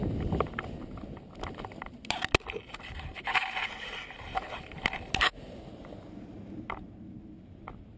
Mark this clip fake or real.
real